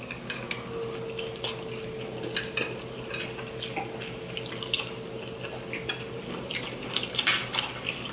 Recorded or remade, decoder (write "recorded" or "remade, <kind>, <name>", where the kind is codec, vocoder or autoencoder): recorded